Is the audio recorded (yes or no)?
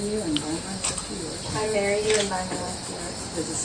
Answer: yes